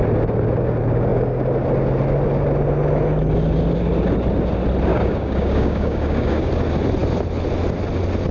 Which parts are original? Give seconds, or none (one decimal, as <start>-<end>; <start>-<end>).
0.0-4.9; 6.5-8.3